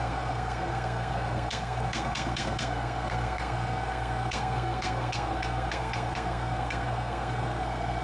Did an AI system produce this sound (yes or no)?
yes